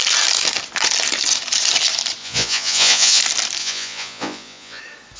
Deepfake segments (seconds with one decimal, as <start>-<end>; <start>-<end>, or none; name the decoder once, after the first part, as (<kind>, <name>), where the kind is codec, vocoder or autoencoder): 2.2-3.2 (vocoder, Vocos); 3.6-4.8